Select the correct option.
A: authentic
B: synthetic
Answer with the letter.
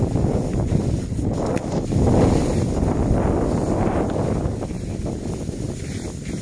A